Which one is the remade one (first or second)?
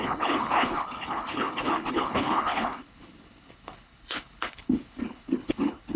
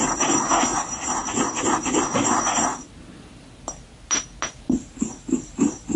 first